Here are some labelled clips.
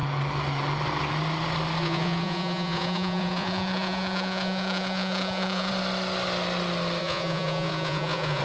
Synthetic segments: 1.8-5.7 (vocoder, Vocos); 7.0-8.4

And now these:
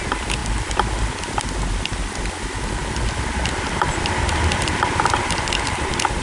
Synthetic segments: none